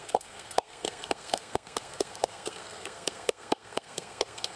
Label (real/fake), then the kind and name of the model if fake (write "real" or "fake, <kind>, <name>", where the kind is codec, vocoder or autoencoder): fake, codec, SNAC